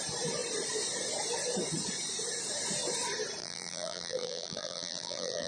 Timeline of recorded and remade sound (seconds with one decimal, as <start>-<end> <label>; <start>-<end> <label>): 0.0-3.4 recorded; 3.4-5.5 remade